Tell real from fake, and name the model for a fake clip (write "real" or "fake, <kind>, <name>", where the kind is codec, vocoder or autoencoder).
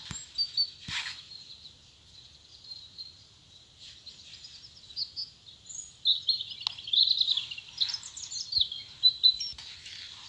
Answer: real